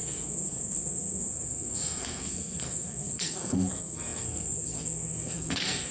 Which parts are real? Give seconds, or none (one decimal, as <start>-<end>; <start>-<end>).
none